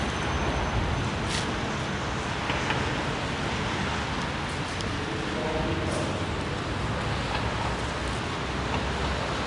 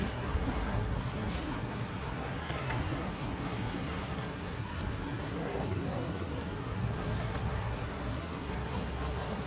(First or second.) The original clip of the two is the first